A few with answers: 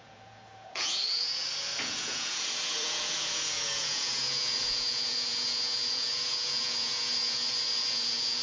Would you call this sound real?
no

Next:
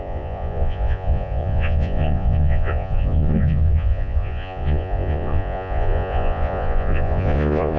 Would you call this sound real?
no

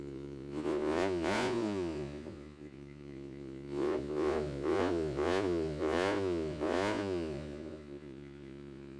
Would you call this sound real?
no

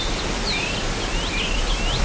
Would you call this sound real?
yes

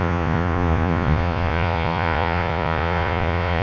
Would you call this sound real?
no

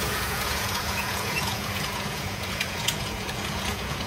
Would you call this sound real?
no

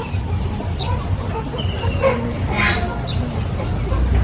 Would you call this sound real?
yes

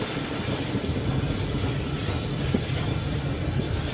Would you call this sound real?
yes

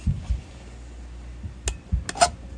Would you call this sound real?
yes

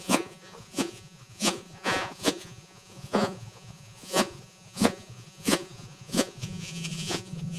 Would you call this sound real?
no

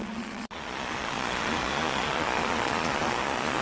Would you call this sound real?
no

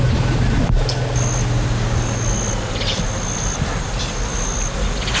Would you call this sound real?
yes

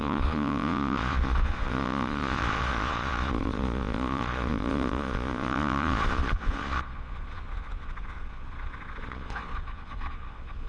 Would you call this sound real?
no